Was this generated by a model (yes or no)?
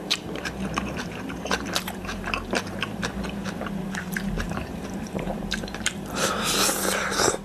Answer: yes